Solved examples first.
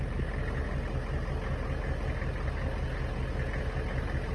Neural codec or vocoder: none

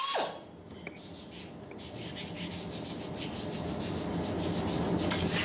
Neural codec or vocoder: none